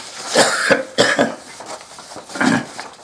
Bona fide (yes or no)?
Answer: yes